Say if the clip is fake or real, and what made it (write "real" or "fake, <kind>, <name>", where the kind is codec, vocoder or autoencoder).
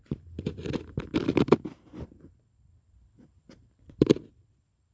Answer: fake, vocoder, BigVGAN v2